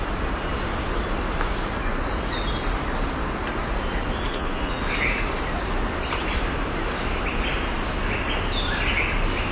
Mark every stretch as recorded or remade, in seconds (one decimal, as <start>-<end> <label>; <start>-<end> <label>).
0.0-4.3 recorded; 4.3-4.8 remade; 4.8-9.5 recorded